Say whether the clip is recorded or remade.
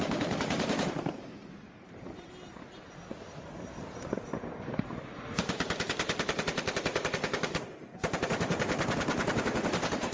remade